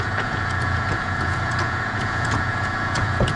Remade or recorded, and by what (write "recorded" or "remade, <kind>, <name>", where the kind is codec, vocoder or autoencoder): remade, vocoder, Vocos